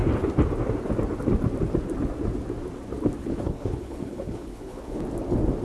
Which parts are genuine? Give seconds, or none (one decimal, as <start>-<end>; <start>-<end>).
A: 0.0-3.2; 5.0-5.6